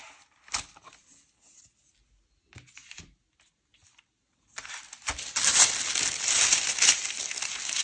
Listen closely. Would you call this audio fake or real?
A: real